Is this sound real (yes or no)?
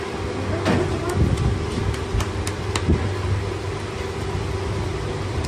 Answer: yes